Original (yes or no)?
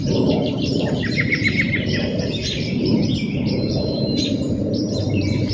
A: no